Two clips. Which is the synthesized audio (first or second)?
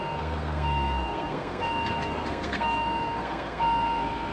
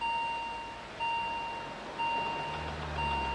first